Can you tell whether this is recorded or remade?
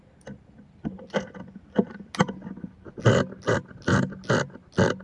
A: recorded